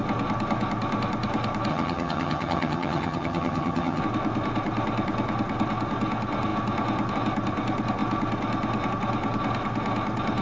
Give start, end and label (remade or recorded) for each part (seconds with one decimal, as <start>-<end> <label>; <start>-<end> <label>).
0.0-1.7 recorded; 1.7-4.0 remade; 4.0-10.4 recorded